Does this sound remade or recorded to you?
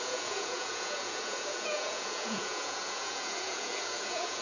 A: remade